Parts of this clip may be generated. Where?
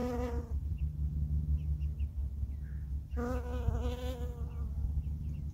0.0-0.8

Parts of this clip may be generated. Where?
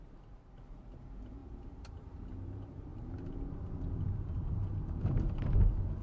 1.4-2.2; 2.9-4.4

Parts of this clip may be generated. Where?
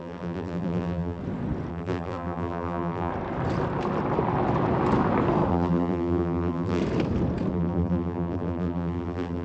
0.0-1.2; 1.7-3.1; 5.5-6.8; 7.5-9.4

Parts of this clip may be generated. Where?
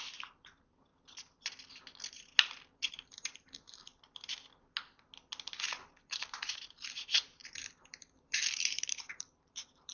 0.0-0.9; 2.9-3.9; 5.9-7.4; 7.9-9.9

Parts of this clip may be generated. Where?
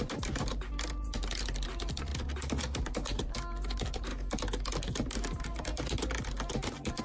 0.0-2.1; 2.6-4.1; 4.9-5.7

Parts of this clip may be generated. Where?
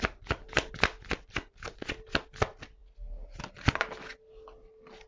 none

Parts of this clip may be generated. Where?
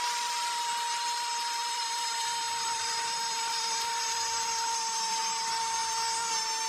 1.6-5.2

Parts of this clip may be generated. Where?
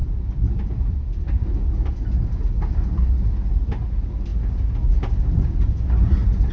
0.0-1.7